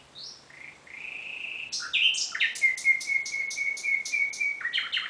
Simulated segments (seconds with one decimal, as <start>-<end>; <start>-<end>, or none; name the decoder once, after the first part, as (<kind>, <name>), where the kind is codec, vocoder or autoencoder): none